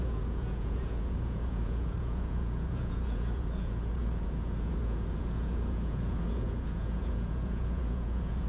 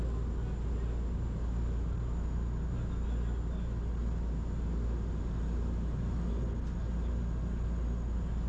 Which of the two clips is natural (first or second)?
second